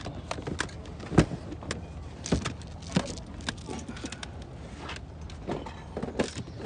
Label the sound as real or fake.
real